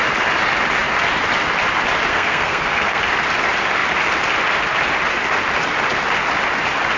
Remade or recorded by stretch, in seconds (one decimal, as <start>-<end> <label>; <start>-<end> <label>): 0.0-2.1 recorded; 2.1-3.0 remade; 3.0-7.0 recorded